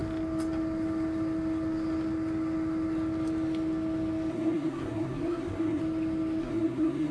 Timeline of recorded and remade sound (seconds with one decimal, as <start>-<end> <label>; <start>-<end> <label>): 0.0-4.3 recorded; 4.3-5.8 remade; 5.8-6.4 recorded; 6.4-7.1 remade

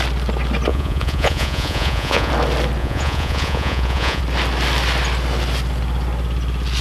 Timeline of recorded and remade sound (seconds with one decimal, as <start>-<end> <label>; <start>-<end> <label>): 0.0-0.7 recorded; 0.7-2.3 remade; 2.3-2.8 recorded; 2.8-4.2 remade; 4.2-6.8 recorded

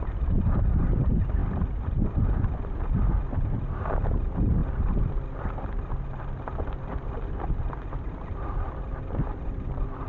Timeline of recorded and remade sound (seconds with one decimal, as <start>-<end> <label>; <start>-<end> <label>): 0.0-1.4 remade; 1.4-2.7 recorded; 2.7-4.6 remade; 4.6-9.3 recorded; 9.3-10.1 remade

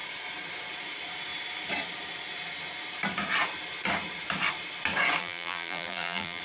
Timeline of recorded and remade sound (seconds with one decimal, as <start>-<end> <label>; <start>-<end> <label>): 0.0-5.2 recorded; 5.2-6.4 remade

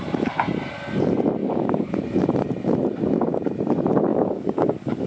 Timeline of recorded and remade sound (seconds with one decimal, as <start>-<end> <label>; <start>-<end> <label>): 0.0-1.4 recorded; 1.4-2.0 remade; 2.0-4.1 recorded; 4.1-5.1 remade